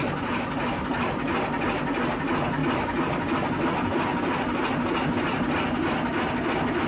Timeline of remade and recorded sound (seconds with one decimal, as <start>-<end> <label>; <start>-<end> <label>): 0.0-6.9 recorded